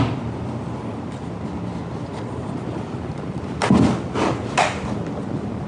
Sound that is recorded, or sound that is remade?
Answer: recorded